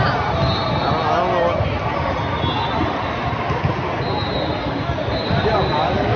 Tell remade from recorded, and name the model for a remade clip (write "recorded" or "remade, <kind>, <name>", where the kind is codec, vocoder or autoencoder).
recorded